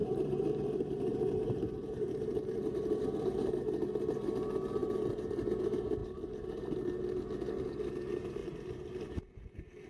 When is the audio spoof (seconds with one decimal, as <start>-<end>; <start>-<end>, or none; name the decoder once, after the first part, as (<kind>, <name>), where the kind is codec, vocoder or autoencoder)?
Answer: 0.0-3.0 (vocoder, BigVGAN v2)